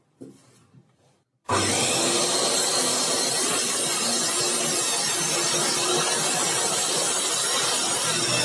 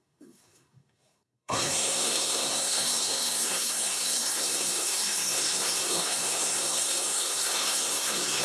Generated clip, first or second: second